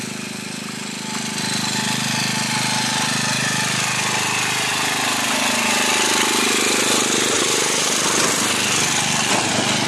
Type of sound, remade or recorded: recorded